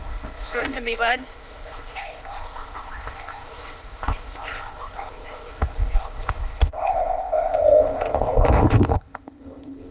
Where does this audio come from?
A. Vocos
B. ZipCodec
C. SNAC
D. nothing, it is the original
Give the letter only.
B